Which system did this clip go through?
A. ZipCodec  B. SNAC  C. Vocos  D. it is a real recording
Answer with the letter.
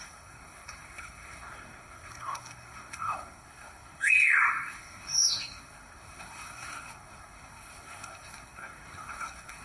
B